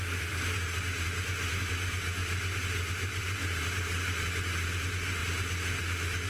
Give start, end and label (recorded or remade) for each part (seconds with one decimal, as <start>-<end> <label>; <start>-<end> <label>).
0.0-5.2 remade; 5.2-5.8 recorded; 5.8-6.3 remade